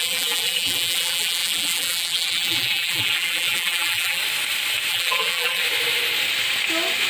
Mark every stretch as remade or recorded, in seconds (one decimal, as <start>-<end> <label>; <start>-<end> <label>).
0.0-4.2 remade; 4.2-4.9 recorded; 4.9-5.6 remade; 5.6-7.1 recorded